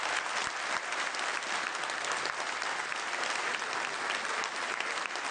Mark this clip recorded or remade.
recorded